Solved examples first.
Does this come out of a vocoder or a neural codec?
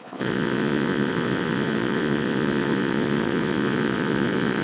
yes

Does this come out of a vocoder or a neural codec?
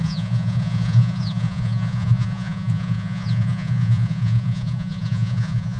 yes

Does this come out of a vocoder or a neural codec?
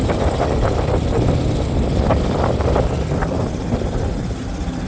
no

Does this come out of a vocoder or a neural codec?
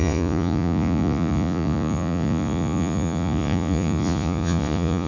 yes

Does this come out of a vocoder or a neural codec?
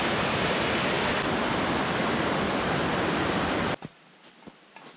no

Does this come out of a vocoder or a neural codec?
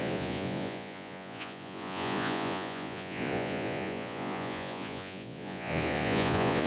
yes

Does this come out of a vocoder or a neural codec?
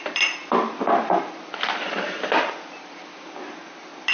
no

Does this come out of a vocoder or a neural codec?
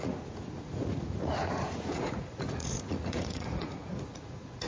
yes